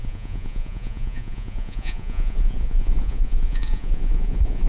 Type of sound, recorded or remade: remade